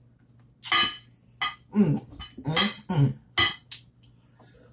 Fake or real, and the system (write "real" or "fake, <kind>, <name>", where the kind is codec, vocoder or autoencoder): real